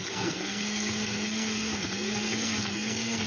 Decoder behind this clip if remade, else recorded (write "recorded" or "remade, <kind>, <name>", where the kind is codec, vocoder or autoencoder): remade, codec, SNAC